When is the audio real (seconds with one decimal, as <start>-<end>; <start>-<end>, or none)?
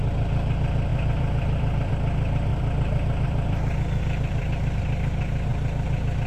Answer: 0.0-0.9; 1.9-2.5; 4.8-6.3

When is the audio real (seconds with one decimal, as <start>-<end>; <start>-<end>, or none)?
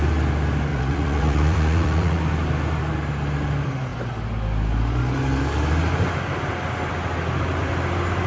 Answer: 0.0-0.7; 2.2-8.3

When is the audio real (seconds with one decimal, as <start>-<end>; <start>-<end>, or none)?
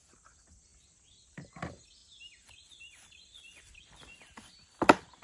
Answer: 0.0-0.7; 1.5-2.0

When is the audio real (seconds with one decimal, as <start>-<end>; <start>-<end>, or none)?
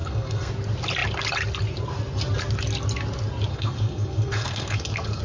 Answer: 0.5-3.5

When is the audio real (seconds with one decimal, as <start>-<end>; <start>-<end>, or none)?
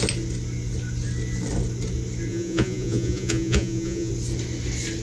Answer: 0.0-2.3; 4.1-5.0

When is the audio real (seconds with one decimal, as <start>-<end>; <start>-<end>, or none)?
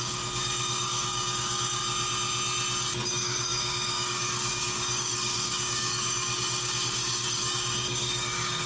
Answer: 1.8-3.1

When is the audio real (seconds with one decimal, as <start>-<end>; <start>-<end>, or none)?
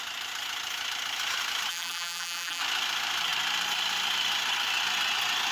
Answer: 0.0-1.7; 2.6-5.5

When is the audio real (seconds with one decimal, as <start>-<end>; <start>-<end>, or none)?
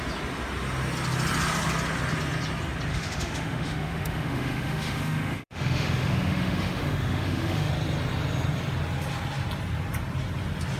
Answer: 0.0-2.9; 7.7-10.8